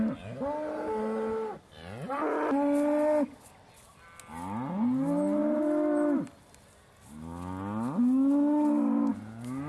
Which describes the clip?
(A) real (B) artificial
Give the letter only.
A